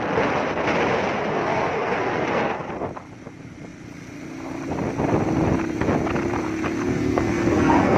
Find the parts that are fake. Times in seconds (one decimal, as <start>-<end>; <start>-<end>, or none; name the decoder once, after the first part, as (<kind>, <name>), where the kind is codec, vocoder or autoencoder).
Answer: 1.3-2.7 (codec, SNAC); 6.9-8.0